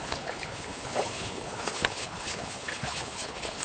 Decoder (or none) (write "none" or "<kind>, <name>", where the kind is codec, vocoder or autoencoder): codec, HILCodec